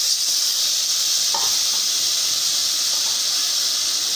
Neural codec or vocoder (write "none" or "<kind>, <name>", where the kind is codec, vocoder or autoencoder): none